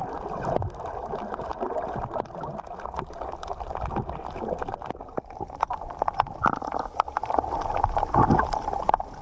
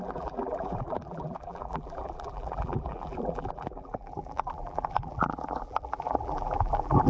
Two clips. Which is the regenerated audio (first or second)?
second